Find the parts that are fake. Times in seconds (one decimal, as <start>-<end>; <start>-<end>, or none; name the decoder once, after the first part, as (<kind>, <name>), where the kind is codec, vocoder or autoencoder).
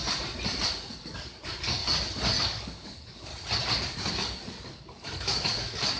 1.0-1.8 (codec, DAC); 2.4-3.3; 4.1-6.0